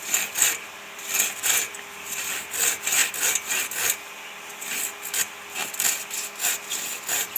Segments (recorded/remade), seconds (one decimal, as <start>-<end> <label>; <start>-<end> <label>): 0.0-7.4 recorded

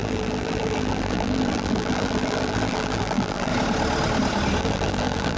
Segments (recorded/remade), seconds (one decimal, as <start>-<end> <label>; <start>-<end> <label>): 0.0-3.5 remade; 3.5-4.6 recorded; 4.6-5.4 remade